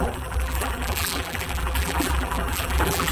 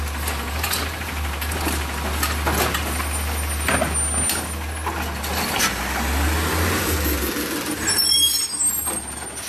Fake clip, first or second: first